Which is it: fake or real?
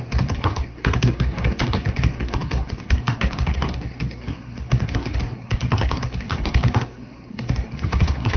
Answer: fake